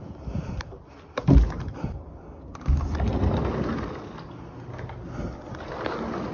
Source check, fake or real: real